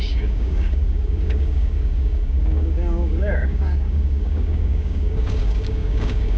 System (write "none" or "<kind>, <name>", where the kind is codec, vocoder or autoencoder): codec, DAC